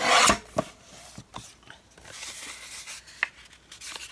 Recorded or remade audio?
recorded